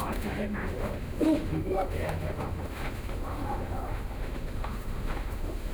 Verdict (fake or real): fake